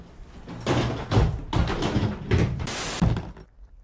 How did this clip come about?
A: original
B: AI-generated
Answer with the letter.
A